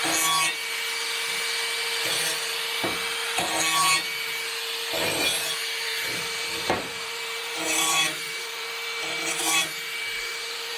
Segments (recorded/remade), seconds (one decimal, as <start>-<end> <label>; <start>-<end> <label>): 0.0-5.9 recorded; 5.9-10.8 remade